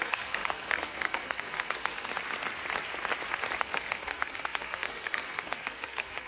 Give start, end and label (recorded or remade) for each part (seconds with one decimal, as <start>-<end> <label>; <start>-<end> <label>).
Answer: 0.0-2.1 remade; 2.1-3.6 recorded; 3.6-6.3 remade